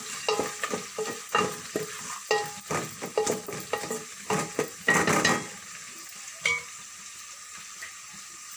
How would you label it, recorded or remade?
recorded